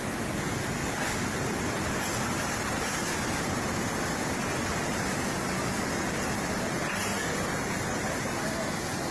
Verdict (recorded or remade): recorded